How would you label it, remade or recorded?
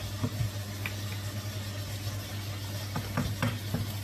recorded